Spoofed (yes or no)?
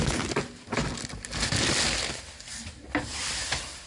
no